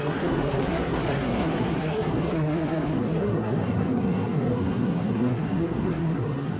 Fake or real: fake